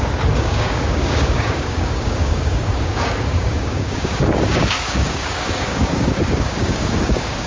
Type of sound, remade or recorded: remade